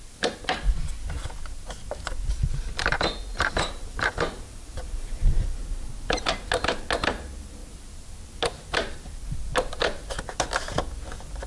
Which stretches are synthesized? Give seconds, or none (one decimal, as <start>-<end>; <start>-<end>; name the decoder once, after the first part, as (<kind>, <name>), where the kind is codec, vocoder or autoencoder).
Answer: 3.3-5.6 (vocoder, BigVGAN v2)

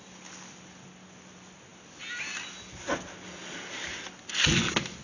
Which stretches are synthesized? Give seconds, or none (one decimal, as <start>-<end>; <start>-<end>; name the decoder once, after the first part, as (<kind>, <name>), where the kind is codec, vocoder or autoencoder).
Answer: none

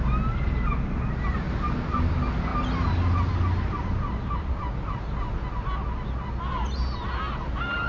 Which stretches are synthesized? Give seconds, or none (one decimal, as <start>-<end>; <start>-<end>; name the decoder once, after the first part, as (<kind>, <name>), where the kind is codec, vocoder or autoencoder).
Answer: none

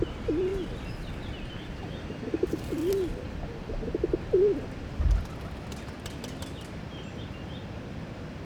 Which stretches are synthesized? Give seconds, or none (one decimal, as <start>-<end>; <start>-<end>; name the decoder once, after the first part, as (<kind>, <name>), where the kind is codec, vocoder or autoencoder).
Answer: 0.0-0.5 (vocoder, BigVGAN v2); 1.1-2.8; 7.2-8.4

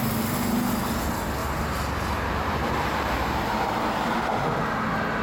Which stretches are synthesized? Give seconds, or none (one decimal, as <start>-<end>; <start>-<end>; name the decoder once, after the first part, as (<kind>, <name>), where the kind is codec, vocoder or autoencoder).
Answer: 1.4-4.5 (vocoder, BigVGAN v2)

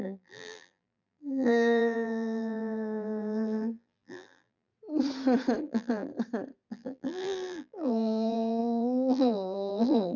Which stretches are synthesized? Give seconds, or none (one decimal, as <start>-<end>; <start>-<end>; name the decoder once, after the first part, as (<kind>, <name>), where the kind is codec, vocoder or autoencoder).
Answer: 0.0-4.7 (vocoder, BigVGAN v2); 5.6-6.1; 6.7-10.2

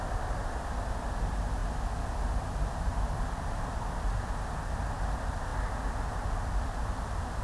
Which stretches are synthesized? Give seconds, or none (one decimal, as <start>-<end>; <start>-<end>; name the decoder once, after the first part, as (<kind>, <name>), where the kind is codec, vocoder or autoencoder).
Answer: none

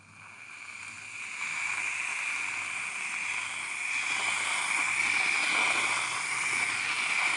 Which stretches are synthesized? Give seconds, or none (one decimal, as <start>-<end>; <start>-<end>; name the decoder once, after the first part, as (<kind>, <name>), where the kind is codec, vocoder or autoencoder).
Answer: none